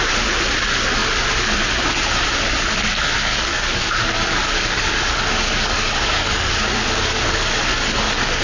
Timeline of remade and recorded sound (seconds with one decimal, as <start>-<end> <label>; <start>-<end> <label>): 0.0-3.3 recorded; 3.3-8.4 remade